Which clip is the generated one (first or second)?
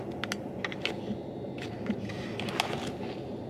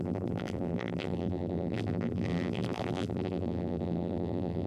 second